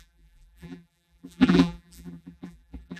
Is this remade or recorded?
remade